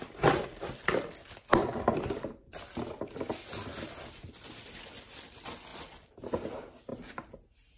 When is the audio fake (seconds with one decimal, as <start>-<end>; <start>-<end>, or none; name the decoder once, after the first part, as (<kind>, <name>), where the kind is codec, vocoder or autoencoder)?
1.5-5.3 (vocoder, BigVGAN v2); 5.7-6.3